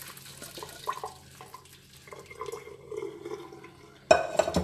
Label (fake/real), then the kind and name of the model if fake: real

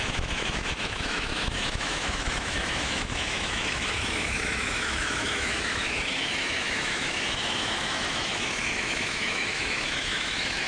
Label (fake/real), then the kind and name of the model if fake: fake, autoencoder, DAC-VAE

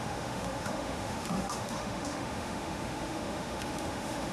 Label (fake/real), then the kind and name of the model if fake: fake, autoencoder, DAC-VAE